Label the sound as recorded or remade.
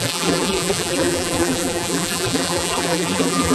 remade